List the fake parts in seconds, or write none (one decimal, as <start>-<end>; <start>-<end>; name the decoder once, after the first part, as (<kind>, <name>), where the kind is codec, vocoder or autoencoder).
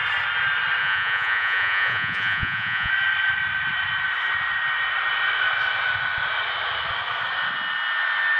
0.8-2.9 (vocoder, Vocos)